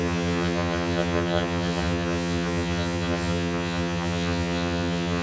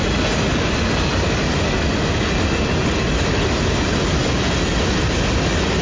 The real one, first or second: second